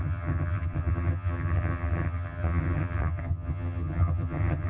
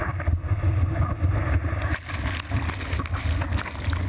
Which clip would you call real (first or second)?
second